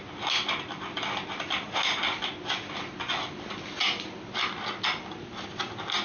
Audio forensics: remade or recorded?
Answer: recorded